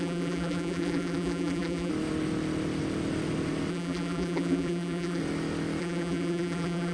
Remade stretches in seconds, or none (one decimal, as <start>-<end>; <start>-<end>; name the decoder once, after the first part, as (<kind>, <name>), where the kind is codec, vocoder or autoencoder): 0.0-1.9 (vocoder, BigVGAN v2); 3.7-5.2; 5.8-6.9